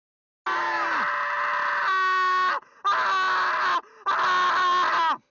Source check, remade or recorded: recorded